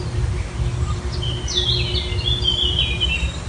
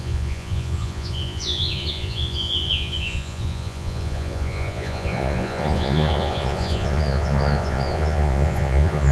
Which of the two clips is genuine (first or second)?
first